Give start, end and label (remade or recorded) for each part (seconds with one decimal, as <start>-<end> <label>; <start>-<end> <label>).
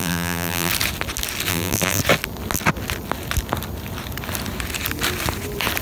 0.0-0.7 remade; 0.7-1.5 recorded; 1.5-2.0 remade; 2.0-5.8 recorded